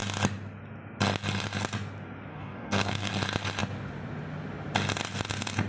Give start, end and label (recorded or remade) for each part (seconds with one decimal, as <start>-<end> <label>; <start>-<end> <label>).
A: 0.0-2.3 recorded; 2.3-3.1 remade; 3.1-5.7 recorded